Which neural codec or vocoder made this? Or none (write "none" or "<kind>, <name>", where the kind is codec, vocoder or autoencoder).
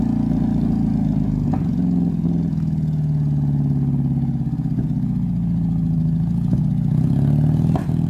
none